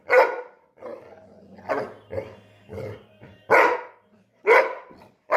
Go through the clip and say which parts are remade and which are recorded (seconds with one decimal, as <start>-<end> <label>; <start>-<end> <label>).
0.0-0.9 remade; 0.9-2.9 recorded; 2.9-5.4 remade